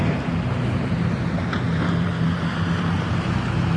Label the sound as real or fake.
fake